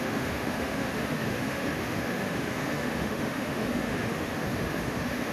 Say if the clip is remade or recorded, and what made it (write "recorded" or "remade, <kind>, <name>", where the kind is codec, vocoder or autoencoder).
remade, autoencoder, DAC-VAE